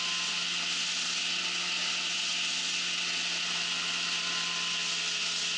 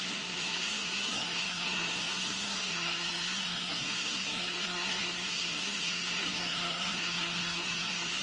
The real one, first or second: first